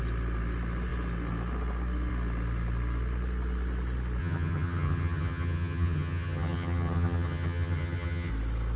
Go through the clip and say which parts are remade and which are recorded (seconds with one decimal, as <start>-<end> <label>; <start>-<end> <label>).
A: 0.0-4.2 recorded; 4.2-8.3 remade; 8.3-8.8 recorded